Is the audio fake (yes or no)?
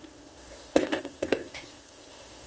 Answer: yes